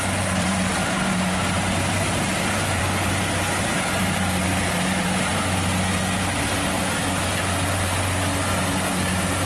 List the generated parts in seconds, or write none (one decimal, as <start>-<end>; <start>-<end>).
0.0-2.8; 4.0-5.3; 9.0-9.5